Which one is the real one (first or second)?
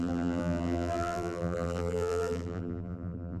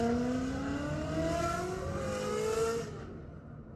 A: second